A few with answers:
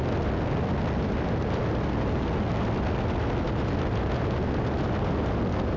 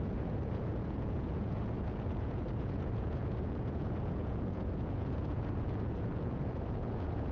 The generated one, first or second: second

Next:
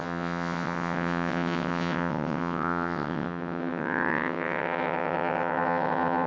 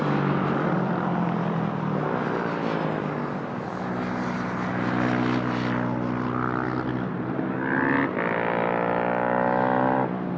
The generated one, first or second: first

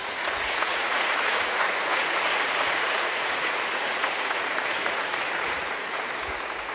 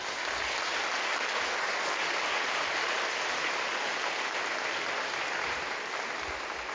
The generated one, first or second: first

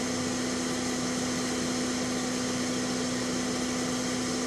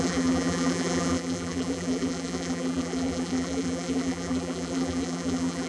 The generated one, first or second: second